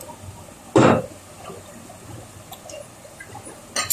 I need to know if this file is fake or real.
real